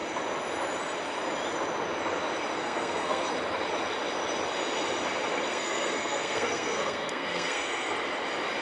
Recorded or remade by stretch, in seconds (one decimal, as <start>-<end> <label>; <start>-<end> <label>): 0.0-2.6 recorded; 2.6-3.3 remade; 3.3-5.5 recorded; 5.5-7.9 remade; 7.9-8.6 recorded